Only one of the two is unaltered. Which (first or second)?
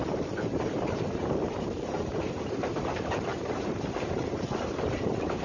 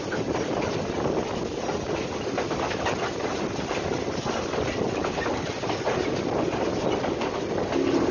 second